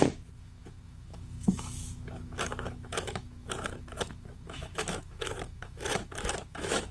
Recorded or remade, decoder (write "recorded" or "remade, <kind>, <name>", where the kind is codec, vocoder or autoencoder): remade, autoencoder, DAC-VAE